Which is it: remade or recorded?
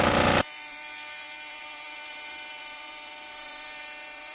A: remade